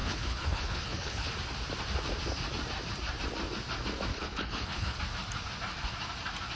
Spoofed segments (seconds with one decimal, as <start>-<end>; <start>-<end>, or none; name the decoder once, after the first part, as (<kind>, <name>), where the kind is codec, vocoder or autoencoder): 0.0-1.3 (codec, HILCodec); 4.1-5.0